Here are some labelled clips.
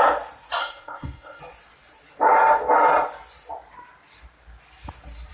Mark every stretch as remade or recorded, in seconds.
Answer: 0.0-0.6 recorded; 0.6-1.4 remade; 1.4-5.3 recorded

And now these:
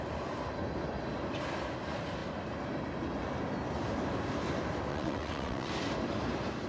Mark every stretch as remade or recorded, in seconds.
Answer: 0.0-4.9 recorded; 4.9-5.7 remade; 5.7-6.7 recorded

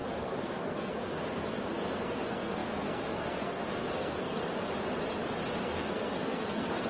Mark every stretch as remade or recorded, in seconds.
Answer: 0.0-4.4 remade; 4.4-5.6 recorded; 5.6-6.9 remade

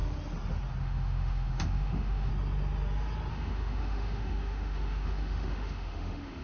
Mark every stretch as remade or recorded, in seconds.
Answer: 0.0-0.8 recorded; 0.8-2.3 remade; 2.3-3.3 recorded; 3.3-6.4 remade